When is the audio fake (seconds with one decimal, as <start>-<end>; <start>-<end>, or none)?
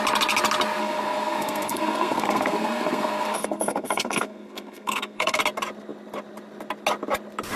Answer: 0.8-5.4